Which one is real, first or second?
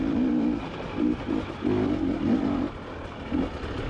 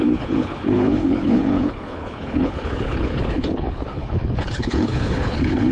first